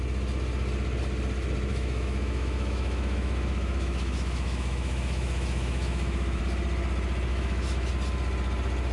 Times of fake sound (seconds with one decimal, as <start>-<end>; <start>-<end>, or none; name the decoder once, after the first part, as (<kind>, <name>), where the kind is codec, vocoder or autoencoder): 1.7-6.4 (autoencoder, DAC-VAE); 7.3-7.9